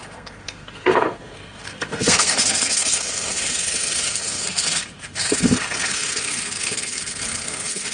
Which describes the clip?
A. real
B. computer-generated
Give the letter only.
B